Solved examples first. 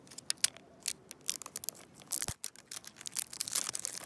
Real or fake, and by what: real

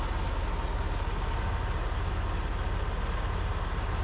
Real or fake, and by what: real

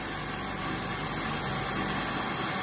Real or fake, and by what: real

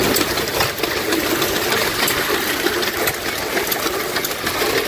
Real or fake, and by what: real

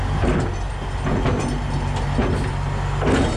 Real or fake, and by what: real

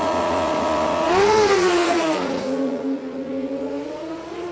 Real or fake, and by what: fake, vocoder, Vocos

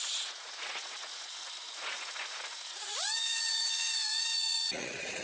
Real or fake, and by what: fake, vocoder, Vocos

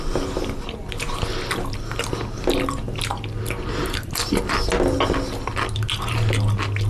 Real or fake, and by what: real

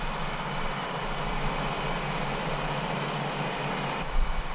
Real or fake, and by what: real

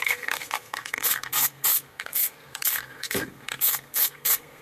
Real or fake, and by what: fake, codec, SNAC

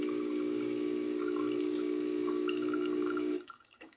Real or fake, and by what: fake, codec, DAC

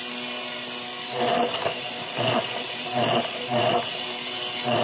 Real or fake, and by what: real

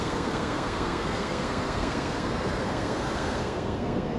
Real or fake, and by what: fake, codec, SNAC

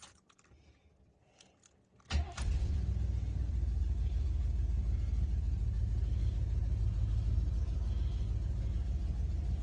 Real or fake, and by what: real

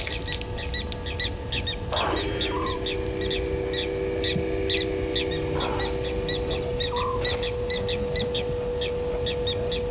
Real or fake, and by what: real